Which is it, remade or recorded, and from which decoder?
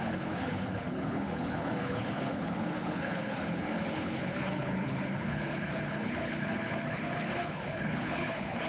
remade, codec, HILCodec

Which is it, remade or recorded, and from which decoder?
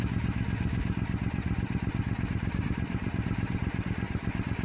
recorded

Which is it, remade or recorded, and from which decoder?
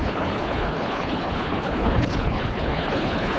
remade, codec, HILCodec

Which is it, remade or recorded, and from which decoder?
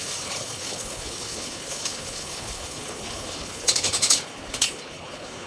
remade, codec, HILCodec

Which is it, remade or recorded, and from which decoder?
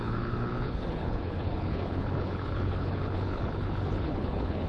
remade, codec, HILCodec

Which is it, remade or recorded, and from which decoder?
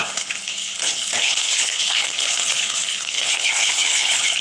remade, codec, HILCodec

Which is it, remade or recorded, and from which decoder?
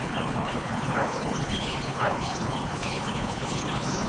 remade, codec, HILCodec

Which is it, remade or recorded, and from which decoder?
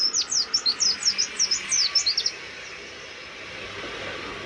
recorded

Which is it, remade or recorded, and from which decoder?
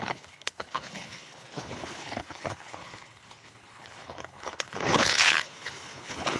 remade, codec, HILCodec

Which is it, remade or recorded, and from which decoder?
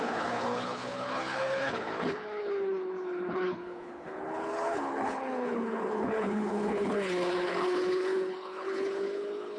remade, codec, HILCodec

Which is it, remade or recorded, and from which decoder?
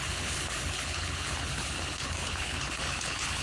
remade, codec, HILCodec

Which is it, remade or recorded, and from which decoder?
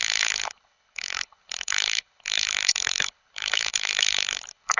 remade, codec, HILCodec